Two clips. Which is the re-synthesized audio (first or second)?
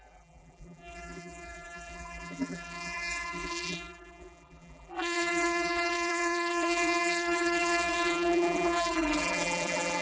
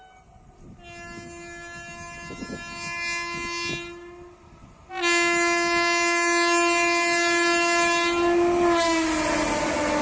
first